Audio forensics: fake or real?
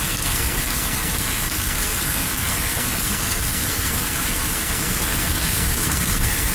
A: fake